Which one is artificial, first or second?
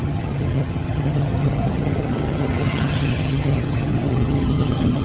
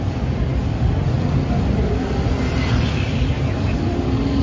first